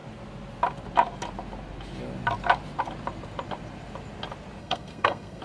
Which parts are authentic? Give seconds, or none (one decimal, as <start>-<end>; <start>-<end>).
0.0-4.6